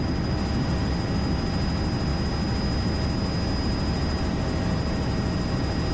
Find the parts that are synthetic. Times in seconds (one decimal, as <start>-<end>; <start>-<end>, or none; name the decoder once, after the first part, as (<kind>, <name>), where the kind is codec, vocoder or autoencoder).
none